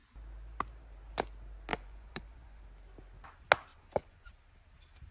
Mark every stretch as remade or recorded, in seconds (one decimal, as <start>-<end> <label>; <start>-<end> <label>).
0.0-1.7 recorded; 1.7-2.6 remade; 2.6-3.7 recorded; 3.7-4.3 remade; 4.3-5.1 recorded